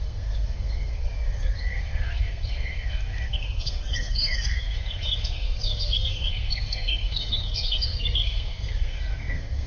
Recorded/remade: remade